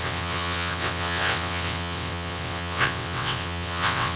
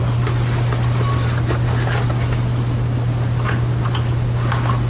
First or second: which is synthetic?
first